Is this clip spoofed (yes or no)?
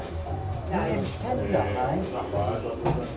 no